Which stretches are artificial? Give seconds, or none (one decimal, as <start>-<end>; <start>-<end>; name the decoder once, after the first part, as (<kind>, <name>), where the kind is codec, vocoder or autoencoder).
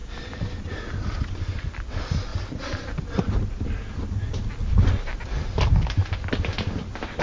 none